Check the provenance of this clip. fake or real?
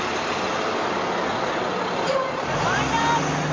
real